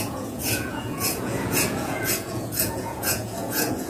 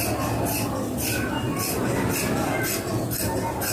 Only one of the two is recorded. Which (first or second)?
second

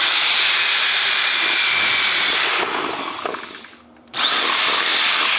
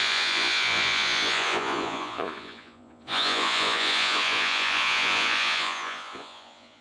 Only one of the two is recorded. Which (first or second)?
first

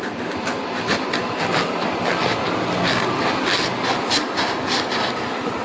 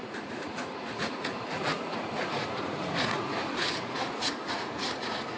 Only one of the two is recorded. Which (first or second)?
first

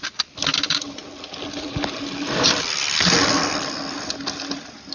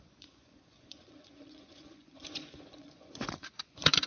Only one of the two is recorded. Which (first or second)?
first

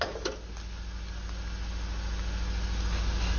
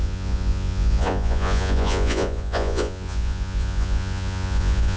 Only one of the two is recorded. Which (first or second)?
first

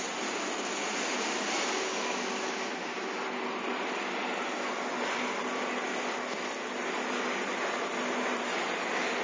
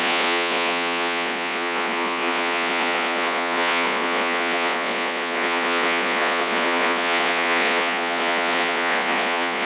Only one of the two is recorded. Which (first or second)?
first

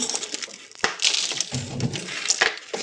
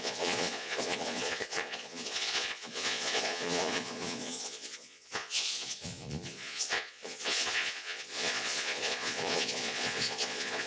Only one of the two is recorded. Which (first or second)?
first